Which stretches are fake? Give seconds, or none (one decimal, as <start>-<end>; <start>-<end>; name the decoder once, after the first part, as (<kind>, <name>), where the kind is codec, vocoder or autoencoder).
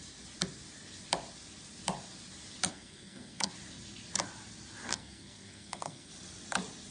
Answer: 2.7-3.5 (codec, SNAC); 4.9-6.1